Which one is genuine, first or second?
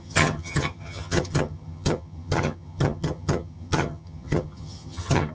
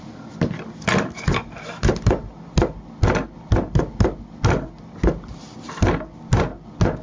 second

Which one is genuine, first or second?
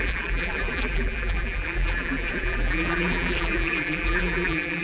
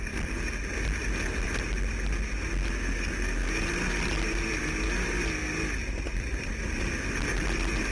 second